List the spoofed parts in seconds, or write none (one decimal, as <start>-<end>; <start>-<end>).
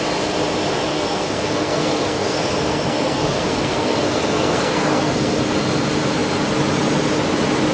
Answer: 0.9-5.5